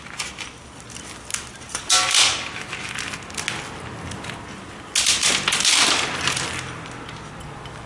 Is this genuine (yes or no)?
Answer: yes